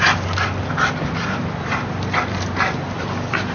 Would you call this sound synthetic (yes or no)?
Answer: no